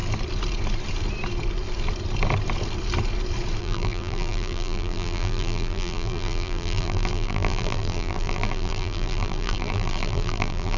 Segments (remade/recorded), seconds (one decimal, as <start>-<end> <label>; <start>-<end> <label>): 0.0-3.6 recorded; 3.6-10.8 remade